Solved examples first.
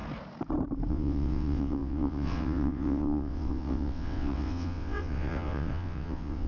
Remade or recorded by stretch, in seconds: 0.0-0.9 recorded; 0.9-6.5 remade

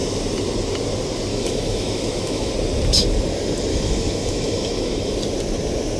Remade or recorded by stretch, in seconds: 0.0-1.3 recorded; 1.3-2.5 remade; 2.5-3.7 recorded; 3.7-5.2 remade; 5.2-6.0 recorded

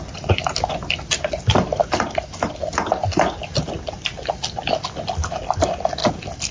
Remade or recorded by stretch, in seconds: 0.0-6.5 recorded

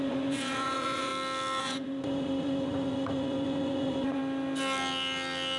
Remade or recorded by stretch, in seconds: 0.0-1.1 remade; 1.1-1.6 recorded; 1.6-4.2 remade; 4.2-5.6 recorded

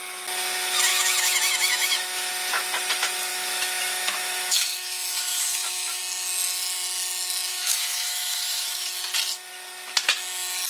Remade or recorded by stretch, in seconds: 0.0-0.9 recorded; 0.9-2.3 remade; 2.3-3.3 recorded; 3.3-6.0 remade; 6.0-7.5 recorded; 7.5-8.9 remade; 8.9-10.7 recorded

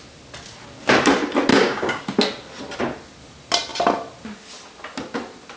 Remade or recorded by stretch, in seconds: 0.0-1.5 recorded; 1.5-2.0 remade; 2.0-5.6 recorded

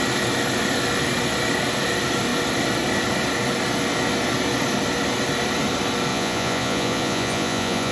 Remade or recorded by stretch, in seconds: 0.0-6.1 recorded; 6.1-7.9 remade